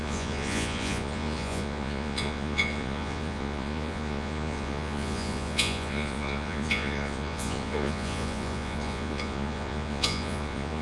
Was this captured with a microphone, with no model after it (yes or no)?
no